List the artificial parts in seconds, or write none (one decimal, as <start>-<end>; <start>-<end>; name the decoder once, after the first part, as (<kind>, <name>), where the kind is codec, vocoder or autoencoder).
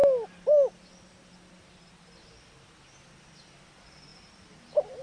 none